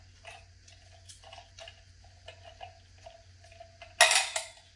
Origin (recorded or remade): recorded